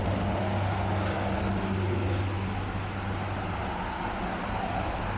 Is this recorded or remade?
recorded